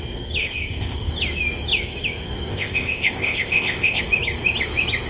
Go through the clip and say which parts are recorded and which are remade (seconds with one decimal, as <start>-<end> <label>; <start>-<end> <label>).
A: 0.0-0.4 recorded; 0.4-1.1 remade; 1.1-2.5 recorded; 2.5-4.0 remade; 4.0-5.1 recorded